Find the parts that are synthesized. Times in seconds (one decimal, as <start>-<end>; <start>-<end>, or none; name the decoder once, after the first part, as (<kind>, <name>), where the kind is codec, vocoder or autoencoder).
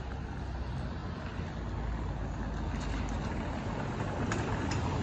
none